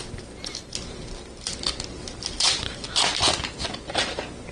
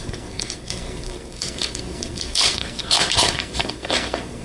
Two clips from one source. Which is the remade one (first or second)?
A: second